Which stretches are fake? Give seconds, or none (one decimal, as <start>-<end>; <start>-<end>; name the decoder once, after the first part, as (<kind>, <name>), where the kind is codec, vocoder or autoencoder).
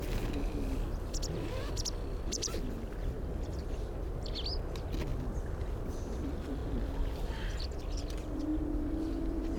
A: 5.1-5.8 (vocoder, BigVGAN v2)